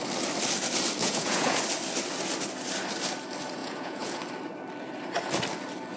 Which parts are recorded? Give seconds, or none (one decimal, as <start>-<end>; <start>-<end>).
0.0-1.0; 1.6-3.6; 4.2-6.0